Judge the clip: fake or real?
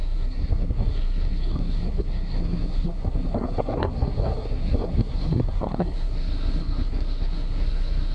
fake